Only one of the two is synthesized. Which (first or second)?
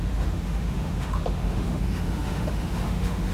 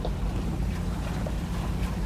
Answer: first